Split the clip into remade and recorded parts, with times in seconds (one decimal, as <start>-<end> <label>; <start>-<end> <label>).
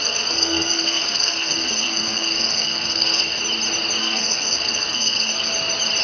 0.0-3.4 remade; 3.4-4.0 recorded; 4.0-5.5 remade; 5.5-6.0 recorded